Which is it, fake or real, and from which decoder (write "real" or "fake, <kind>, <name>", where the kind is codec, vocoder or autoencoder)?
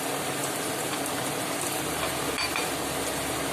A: real